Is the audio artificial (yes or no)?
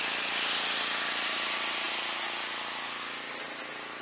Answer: no